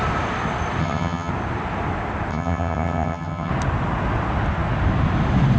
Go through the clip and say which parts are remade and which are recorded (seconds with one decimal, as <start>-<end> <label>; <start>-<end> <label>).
0.0-0.8 recorded; 0.8-1.3 remade; 1.3-2.3 recorded; 2.3-3.5 remade; 3.5-5.6 recorded